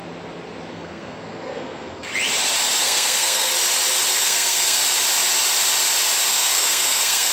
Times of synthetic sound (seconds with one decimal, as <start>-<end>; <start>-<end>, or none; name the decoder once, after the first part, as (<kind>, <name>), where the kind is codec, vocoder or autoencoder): 0.7-2.1 (codec, SNAC); 2.8-3.5; 4.1-4.8; 6.3-7.3